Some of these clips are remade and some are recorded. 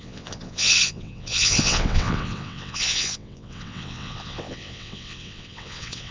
remade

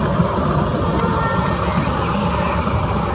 remade